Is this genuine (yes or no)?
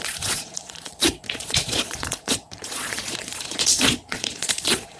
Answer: no